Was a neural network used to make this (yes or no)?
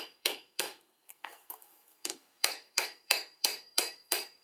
yes